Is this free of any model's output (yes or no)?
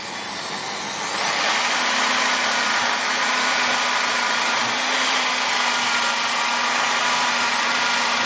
yes